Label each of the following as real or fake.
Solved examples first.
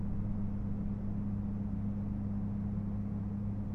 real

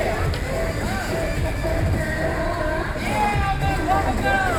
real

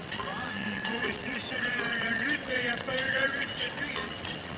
fake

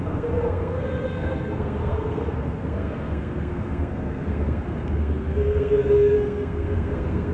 fake